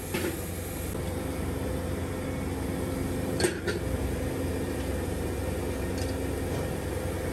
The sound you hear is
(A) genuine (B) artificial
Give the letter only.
A